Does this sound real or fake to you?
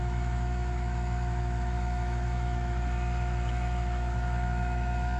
fake